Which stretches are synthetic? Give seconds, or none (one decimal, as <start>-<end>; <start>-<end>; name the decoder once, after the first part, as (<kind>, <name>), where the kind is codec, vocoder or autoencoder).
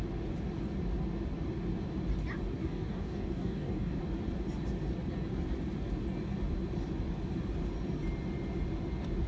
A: 2.6-4.0 (codec, DAC)